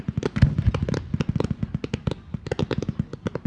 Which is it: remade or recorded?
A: recorded